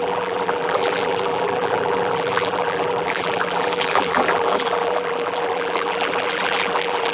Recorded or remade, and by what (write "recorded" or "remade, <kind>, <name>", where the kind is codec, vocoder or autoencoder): remade, vocoder, BigVGAN v2